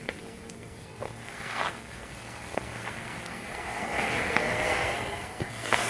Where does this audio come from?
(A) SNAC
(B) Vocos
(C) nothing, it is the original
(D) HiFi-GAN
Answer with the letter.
A